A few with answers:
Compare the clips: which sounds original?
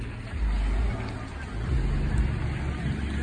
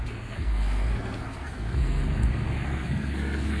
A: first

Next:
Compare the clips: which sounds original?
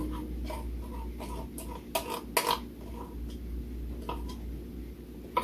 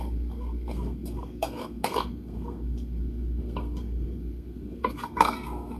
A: first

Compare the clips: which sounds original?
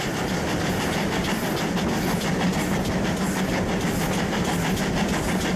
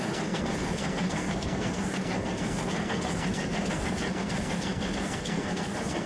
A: first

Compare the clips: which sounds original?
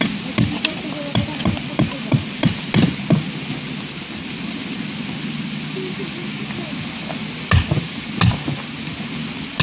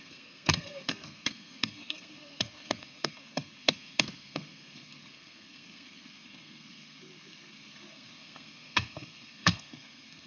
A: first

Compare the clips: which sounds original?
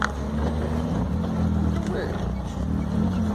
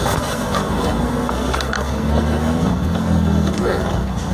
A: first